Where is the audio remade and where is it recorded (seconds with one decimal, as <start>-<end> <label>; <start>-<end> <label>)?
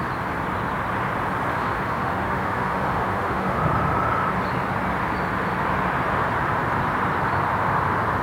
0.0-1.5 recorded; 1.5-3.6 remade; 3.6-8.2 recorded